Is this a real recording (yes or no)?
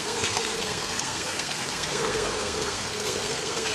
no